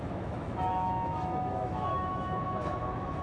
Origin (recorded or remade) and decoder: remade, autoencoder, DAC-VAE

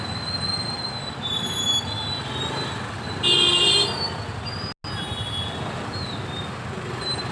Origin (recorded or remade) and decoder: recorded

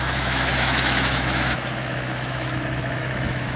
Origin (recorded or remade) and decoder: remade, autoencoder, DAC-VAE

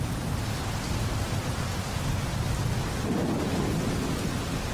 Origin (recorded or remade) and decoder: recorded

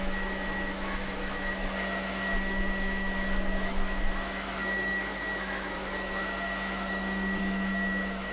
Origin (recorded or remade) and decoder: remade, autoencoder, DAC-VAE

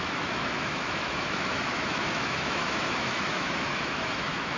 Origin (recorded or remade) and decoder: remade, autoencoder, DAC-VAE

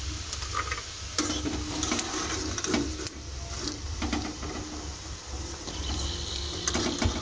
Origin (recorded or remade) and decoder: recorded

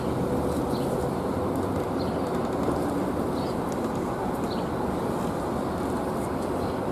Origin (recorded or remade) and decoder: recorded